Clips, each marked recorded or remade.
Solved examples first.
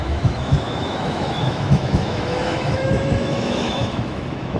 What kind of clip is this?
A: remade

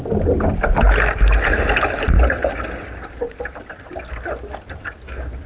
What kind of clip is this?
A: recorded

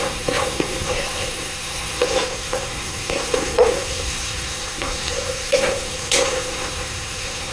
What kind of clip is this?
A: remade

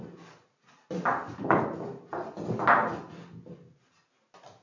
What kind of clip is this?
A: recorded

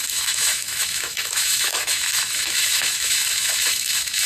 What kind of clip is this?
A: remade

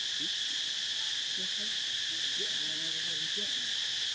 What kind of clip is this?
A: recorded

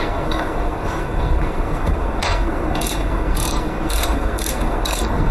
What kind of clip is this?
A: remade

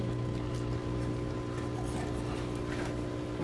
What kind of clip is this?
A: recorded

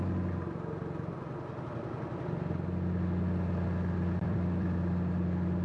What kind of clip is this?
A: recorded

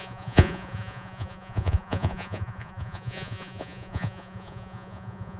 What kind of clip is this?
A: remade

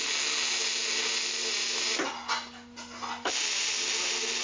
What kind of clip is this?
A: recorded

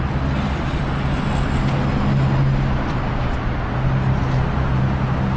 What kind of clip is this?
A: recorded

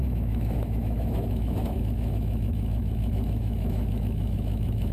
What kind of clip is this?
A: remade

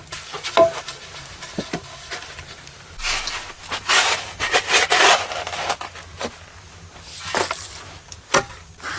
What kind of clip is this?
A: recorded